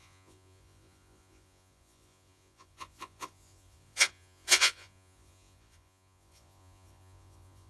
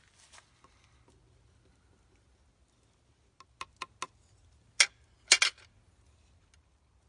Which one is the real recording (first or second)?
second